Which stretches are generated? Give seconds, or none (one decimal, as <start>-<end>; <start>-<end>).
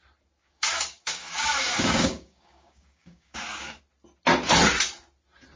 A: 0.4-3.8